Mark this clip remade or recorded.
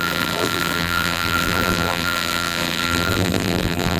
remade